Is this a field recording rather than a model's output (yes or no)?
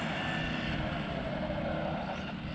yes